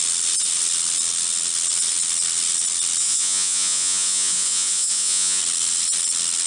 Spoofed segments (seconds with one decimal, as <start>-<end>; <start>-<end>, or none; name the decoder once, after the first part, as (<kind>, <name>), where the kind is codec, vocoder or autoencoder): 3.0-5.4 (vocoder, Vocos)